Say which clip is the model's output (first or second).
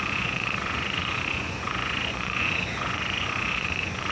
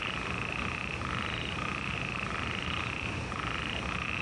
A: first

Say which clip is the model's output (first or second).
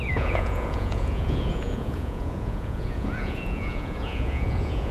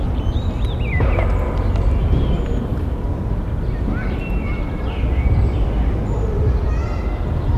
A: first